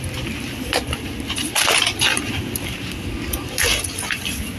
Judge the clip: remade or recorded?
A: recorded